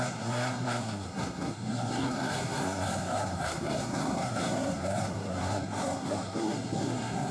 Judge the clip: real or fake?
fake